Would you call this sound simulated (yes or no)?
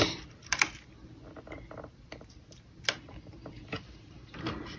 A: yes